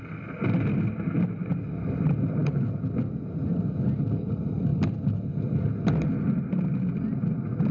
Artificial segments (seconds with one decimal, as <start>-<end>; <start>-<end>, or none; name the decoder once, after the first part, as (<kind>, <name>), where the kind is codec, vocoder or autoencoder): none